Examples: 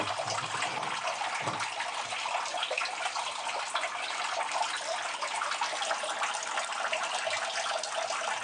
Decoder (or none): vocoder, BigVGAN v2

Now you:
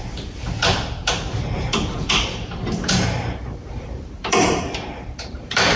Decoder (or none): vocoder, BigVGAN v2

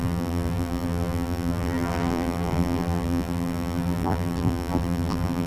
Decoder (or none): vocoder, BigVGAN v2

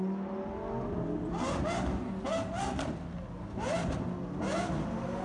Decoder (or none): none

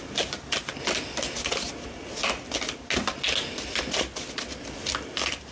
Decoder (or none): none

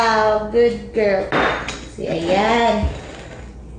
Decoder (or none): none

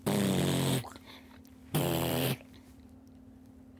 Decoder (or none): vocoder, BigVGAN v2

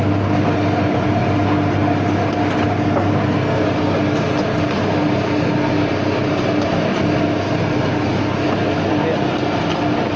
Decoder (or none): none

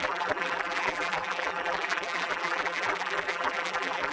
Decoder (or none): vocoder, BigVGAN v2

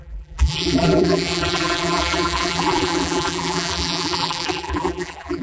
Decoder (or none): vocoder, BigVGAN v2